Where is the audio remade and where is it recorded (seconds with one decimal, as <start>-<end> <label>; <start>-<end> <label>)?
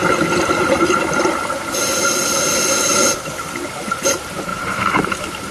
0.0-4.5 recorded; 4.5-5.5 remade